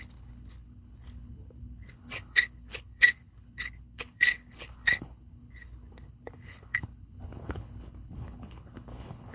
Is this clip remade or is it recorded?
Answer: remade